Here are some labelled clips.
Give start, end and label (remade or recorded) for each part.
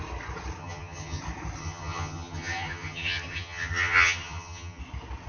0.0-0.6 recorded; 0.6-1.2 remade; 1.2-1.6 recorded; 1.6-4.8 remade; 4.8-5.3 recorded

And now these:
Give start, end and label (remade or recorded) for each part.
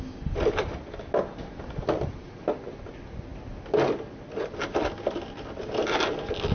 0.0-6.5 recorded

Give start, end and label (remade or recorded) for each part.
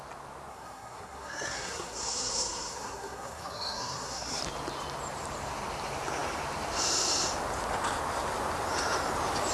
0.0-0.5 recorded; 0.5-4.4 remade; 4.4-9.5 recorded